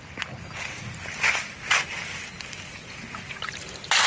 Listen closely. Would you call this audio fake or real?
real